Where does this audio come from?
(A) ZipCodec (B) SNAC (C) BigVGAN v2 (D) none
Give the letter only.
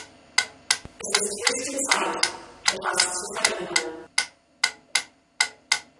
D